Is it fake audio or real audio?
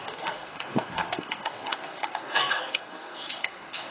fake